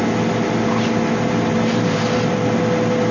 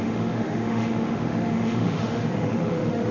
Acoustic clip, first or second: first